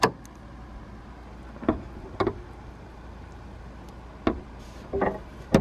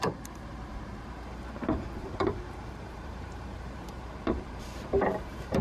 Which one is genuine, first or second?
first